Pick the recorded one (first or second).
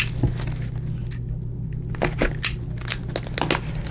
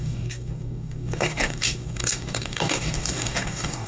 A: first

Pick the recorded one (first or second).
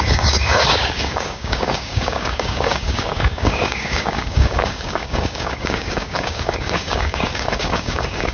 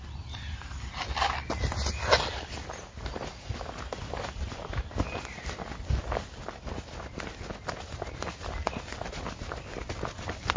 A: second